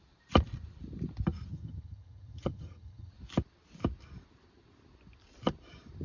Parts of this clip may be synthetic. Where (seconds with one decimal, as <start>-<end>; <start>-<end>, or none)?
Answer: 1.5-3.1